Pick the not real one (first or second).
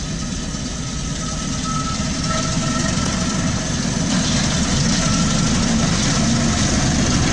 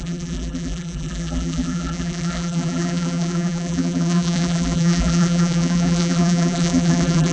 second